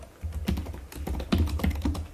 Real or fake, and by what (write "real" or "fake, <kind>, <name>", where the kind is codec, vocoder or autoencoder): real